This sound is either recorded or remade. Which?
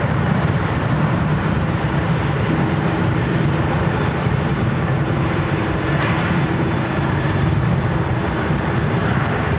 remade